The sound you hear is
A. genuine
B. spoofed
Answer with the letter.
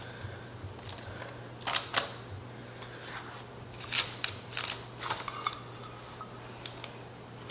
A